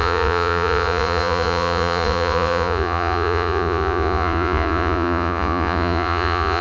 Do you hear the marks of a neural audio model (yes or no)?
yes